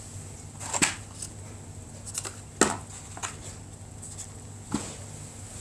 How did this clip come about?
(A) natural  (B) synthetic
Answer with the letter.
A